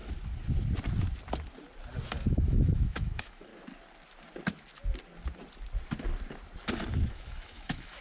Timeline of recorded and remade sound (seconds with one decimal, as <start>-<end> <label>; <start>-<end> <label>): 0.0-2.3 recorded; 2.3-3.5 remade; 3.5-7.1 recorded; 7.1-8.0 remade